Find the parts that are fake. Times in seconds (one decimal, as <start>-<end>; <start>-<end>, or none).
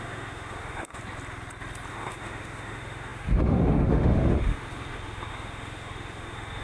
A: 0.0-1.0; 1.9-6.6